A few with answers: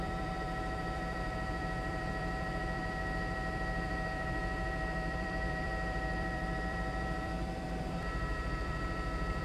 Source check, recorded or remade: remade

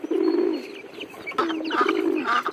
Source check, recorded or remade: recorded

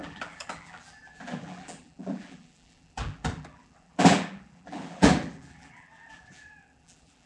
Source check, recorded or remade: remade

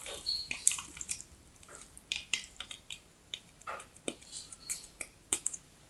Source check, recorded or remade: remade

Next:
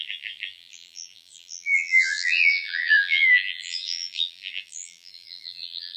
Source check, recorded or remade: remade